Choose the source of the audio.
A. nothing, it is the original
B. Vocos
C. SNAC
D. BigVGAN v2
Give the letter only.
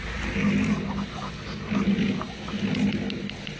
A